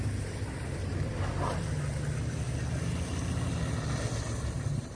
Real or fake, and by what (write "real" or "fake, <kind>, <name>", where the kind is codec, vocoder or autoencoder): real